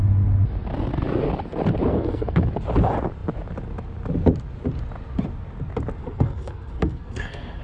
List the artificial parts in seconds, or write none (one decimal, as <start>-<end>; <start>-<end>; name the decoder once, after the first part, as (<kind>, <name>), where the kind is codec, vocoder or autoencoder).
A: 1.9-2.5 (codec, SNAC); 6.0-7.6